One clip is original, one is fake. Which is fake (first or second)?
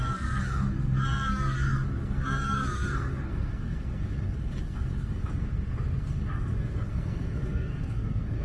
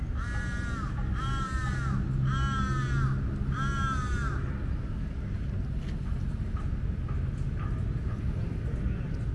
first